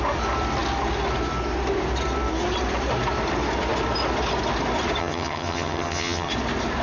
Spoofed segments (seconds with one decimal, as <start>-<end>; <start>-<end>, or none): 5.0-6.3